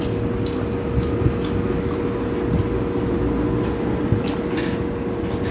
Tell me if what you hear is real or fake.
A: real